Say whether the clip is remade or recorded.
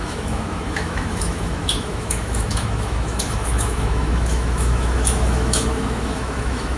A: remade